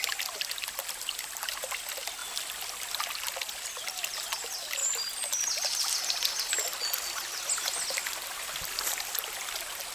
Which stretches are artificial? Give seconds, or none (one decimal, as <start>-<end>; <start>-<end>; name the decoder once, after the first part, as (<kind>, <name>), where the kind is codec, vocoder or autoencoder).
none